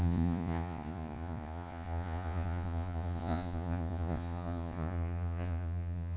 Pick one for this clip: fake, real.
fake